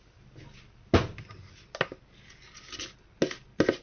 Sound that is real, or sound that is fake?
real